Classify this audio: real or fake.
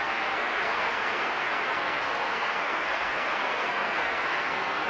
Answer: fake